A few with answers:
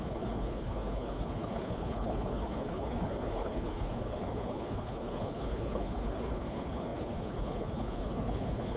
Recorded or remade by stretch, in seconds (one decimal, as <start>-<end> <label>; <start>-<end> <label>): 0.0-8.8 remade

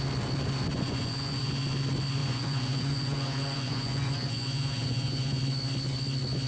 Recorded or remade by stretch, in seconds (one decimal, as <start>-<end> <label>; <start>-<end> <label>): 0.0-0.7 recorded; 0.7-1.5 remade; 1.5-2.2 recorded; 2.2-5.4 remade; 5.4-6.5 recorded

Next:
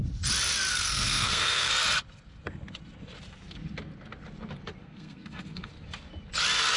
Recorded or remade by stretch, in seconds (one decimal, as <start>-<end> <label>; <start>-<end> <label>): 0.0-0.7 recorded; 0.7-1.7 remade; 1.7-4.8 recorded; 4.8-5.7 remade; 5.7-6.8 recorded

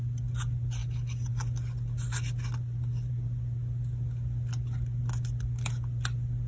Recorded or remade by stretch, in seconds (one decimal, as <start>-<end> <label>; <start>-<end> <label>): 0.0-6.5 recorded

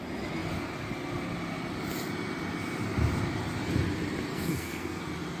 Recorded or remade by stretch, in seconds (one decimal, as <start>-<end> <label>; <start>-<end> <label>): 0.0-4.3 recorded; 4.3-5.0 remade; 5.0-5.4 recorded

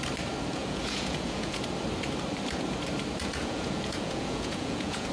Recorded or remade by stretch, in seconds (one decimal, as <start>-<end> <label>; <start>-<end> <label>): 0.0-0.6 recorded; 0.6-1.6 remade; 1.6-3.3 recorded; 3.3-5.1 remade

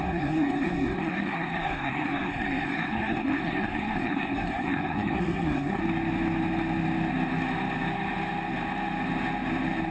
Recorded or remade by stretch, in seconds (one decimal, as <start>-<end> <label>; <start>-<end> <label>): 0.0-5.8 remade; 5.8-9.9 recorded